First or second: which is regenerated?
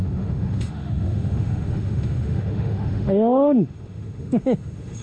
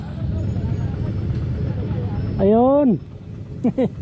first